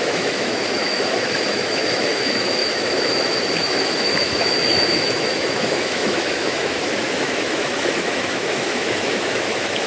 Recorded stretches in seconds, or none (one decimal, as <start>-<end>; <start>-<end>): none